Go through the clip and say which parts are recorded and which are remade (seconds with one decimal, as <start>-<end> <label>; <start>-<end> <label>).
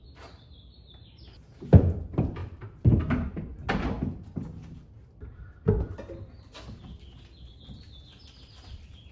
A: 0.0-3.5 remade; 3.5-8.7 recorded; 8.7-9.1 remade